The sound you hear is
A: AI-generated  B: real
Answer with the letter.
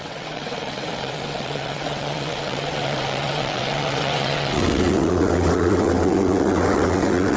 A